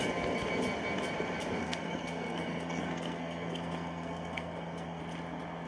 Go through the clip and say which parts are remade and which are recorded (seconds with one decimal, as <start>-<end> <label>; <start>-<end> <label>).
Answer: 0.0-1.6 recorded; 1.6-5.0 remade; 5.0-5.7 recorded